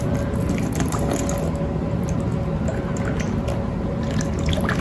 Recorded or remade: recorded